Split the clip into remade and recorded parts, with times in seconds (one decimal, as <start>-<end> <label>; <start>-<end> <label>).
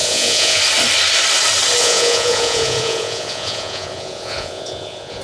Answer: 0.0-0.6 remade; 0.6-1.8 recorded; 1.8-5.2 remade